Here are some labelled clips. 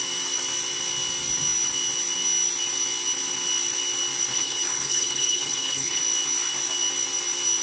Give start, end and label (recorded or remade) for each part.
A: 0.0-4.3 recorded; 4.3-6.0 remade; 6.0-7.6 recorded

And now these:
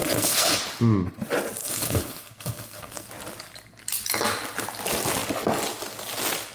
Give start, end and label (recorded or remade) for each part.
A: 0.0-0.6 remade; 0.6-1.6 recorded; 1.6-3.1 remade; 3.1-6.5 recorded

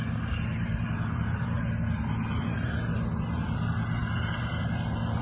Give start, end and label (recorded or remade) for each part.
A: 0.0-0.5 recorded; 0.5-3.6 remade; 3.6-4.0 recorded; 4.0-4.7 remade; 4.7-5.2 recorded

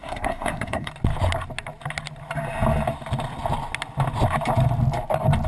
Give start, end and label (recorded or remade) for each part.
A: 0.0-0.9 remade; 0.9-5.5 recorded

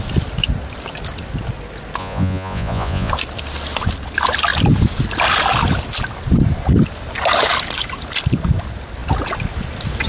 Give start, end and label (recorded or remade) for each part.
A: 0.0-2.0 recorded; 2.0-3.1 remade; 3.1-10.1 recorded

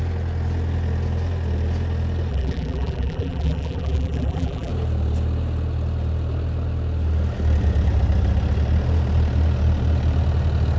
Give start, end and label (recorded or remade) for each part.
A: 0.0-2.3 recorded; 2.3-4.7 remade; 4.7-10.8 recorded